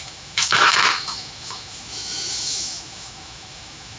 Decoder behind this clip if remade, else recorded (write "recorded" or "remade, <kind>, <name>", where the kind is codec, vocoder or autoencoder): remade, autoencoder, DAC-VAE